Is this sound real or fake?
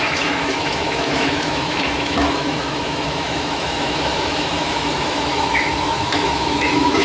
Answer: fake